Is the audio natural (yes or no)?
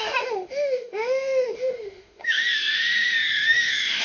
no